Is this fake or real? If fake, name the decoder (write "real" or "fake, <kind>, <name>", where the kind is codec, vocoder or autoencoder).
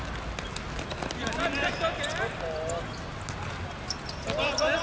real